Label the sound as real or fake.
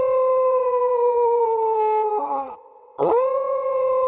fake